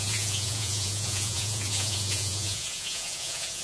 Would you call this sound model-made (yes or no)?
yes